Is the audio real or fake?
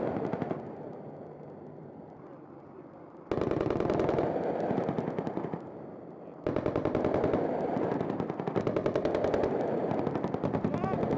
real